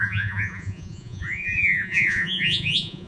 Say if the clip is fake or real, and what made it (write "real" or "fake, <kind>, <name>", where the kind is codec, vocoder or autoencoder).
fake, vocoder, Vocos